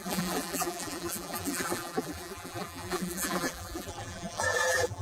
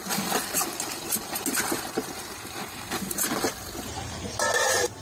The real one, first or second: second